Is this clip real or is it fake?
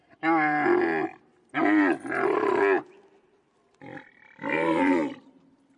fake